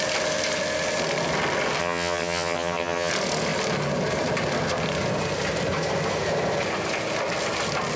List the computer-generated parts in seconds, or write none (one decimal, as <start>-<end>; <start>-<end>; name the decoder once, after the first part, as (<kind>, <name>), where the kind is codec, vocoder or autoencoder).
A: 1.8-3.1 (vocoder, HiFi-GAN)